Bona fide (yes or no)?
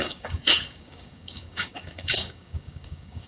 no